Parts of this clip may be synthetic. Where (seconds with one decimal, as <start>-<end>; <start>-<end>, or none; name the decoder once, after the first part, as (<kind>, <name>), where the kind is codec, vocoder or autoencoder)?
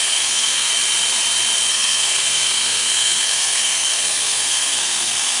0.0-0.7 (codec, SNAC); 1.7-5.4